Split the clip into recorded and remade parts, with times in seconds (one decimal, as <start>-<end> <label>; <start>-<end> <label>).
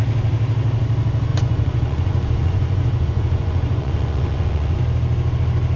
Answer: 0.0-1.3 recorded; 1.3-4.8 remade; 4.8-5.8 recorded